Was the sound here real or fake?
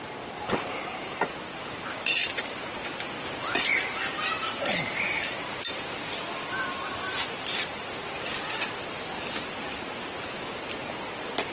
fake